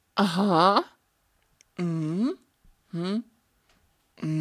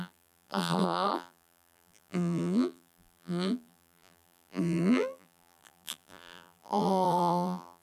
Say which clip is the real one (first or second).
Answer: first